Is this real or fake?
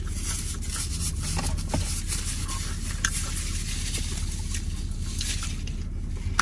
real